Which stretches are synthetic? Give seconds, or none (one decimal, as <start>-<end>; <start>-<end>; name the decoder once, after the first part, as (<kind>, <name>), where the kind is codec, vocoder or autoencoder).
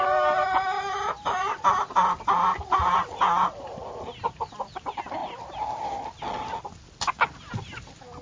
none